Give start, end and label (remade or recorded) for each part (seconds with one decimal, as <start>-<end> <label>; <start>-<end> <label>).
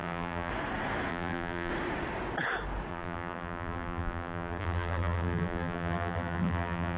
0.0-0.5 remade; 0.5-1.1 recorded; 1.1-1.7 remade; 1.7-2.9 recorded; 2.9-7.0 remade